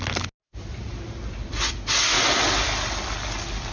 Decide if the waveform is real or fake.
real